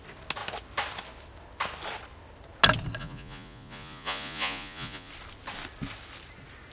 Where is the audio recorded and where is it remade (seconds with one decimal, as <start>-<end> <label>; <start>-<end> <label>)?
0.0-3.0 recorded; 3.0-5.1 remade; 5.1-6.7 recorded